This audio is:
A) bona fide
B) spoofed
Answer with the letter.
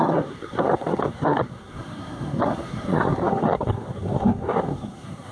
B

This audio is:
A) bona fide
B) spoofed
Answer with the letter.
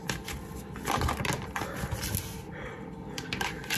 A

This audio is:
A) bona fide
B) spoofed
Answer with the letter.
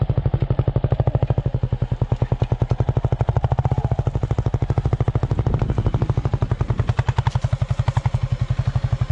A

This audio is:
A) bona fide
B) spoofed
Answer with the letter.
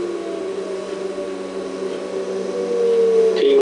A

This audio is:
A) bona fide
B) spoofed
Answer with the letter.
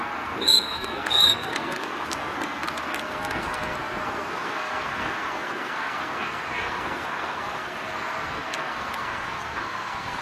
B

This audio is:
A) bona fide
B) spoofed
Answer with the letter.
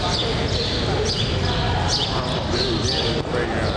A